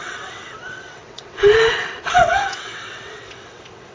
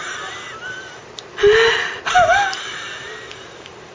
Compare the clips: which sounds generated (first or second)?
first